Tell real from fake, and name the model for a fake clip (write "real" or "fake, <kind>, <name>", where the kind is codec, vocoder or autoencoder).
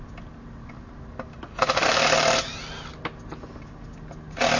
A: real